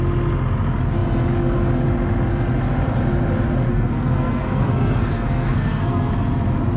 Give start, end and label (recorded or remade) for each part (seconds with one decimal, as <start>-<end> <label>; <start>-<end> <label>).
0.0-3.7 recorded; 3.7-6.1 remade; 6.1-6.8 recorded